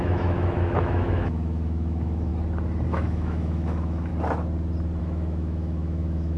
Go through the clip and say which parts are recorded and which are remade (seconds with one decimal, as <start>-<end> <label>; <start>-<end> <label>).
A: 0.0-2.3 remade; 2.3-2.9 recorded; 2.9-4.1 remade; 4.1-5.0 recorded; 5.0-6.4 remade

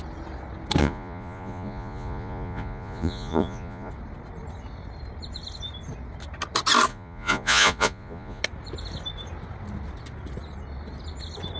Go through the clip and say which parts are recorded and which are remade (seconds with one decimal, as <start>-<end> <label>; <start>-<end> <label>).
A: 0.0-0.8 recorded; 0.8-3.9 remade; 3.9-6.9 recorded; 6.9-8.4 remade; 8.4-11.6 recorded

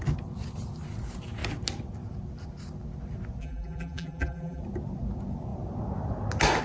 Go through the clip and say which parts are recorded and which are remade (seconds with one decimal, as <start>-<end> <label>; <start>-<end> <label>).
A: 0.0-3.4 recorded; 3.4-4.6 remade; 4.6-6.6 recorded